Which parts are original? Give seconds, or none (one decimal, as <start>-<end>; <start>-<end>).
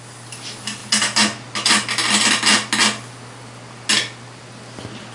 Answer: 0.0-5.1